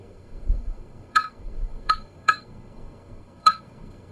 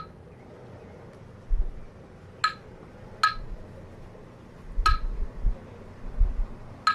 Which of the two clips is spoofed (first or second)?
first